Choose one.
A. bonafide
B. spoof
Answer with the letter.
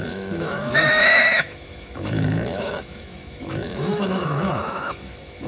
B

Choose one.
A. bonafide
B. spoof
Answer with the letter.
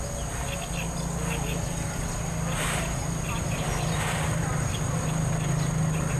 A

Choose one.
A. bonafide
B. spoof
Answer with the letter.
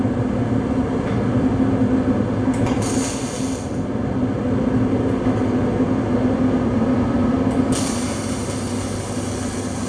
A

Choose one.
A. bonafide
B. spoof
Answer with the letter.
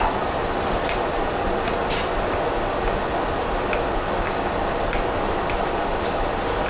A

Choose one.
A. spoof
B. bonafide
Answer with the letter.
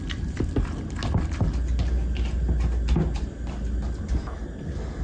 B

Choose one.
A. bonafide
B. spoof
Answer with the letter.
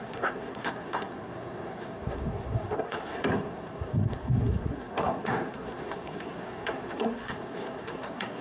B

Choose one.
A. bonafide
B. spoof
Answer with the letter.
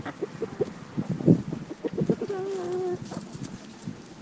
A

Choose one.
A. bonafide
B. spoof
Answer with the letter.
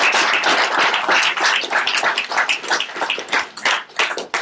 A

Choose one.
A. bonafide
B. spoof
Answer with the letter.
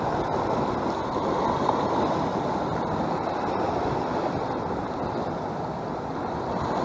A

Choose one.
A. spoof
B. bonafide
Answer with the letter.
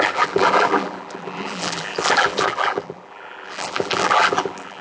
A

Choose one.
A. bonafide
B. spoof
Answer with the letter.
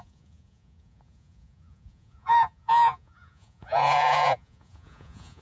B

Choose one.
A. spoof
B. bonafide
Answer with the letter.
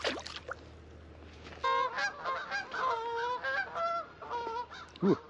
B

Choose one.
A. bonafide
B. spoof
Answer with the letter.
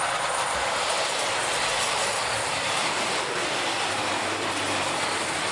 A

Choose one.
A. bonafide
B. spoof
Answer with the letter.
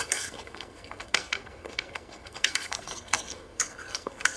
B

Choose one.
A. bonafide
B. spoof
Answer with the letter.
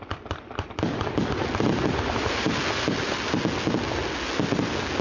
A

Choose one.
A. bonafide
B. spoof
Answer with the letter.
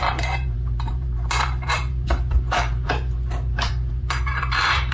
B